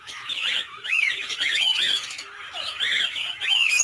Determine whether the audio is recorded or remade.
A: remade